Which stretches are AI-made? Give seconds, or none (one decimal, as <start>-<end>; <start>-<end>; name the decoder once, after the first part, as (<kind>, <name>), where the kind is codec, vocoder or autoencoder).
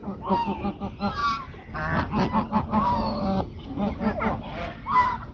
0.0-0.7 (codec, DAC); 2.7-3.4